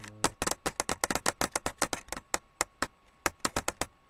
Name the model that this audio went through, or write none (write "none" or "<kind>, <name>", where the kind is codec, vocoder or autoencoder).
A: none